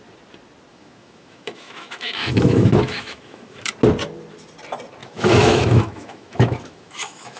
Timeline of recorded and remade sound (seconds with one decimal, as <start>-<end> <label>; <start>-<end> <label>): 0.0-0.7 recorded; 0.7-3.7 remade; 3.7-5.0 recorded; 5.0-7.4 remade